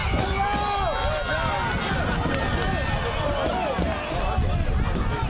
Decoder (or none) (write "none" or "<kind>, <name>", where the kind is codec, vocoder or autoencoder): none